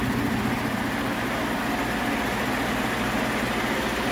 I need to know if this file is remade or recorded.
recorded